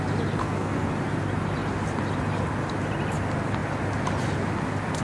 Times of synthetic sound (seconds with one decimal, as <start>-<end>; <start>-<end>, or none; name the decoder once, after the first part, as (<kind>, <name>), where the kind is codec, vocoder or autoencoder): 0.4-0.9 (codec, SNAC)